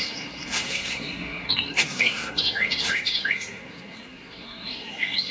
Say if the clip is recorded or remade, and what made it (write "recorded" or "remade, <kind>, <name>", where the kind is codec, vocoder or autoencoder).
remade, codec, SNAC